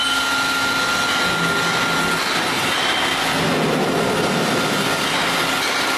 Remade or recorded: recorded